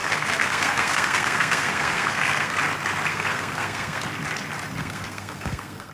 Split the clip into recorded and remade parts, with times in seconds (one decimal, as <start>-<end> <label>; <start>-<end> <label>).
0.0-2.6 remade; 2.6-3.1 recorded; 3.1-4.0 remade; 4.0-4.8 recorded; 4.8-5.9 remade